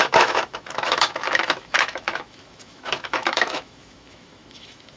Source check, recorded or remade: remade